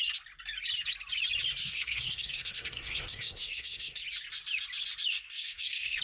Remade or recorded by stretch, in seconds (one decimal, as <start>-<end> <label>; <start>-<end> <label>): 0.0-1.6 recorded; 1.6-4.0 remade; 4.0-5.1 recorded; 5.1-6.0 remade